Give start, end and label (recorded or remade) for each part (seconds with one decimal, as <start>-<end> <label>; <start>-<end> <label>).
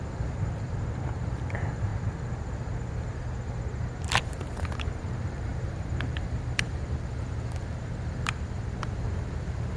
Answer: 0.0-1.9 remade; 1.9-4.2 recorded; 4.2-9.8 remade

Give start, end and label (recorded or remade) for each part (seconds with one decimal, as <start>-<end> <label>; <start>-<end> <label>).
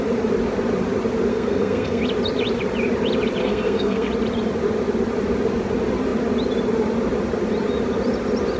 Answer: 0.0-1.3 recorded; 1.3-2.0 remade; 2.0-3.4 recorded; 3.4-4.1 remade; 4.1-8.6 recorded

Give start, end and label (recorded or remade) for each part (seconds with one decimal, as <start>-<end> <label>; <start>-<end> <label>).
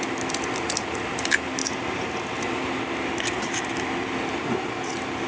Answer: 0.0-5.3 recorded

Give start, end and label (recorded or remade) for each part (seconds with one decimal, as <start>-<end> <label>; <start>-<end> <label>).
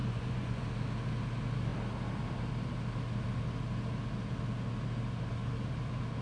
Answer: 0.0-0.6 remade; 0.6-6.2 recorded